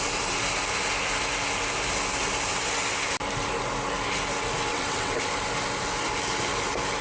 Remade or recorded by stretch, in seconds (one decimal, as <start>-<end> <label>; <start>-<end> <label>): 0.0-4.7 recorded; 4.7-5.2 remade; 5.2-7.0 recorded